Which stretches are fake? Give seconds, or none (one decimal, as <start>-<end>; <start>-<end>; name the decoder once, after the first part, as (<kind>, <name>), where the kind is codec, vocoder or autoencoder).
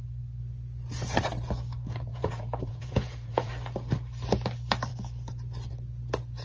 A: 2.1-3.5 (vocoder, Vocos)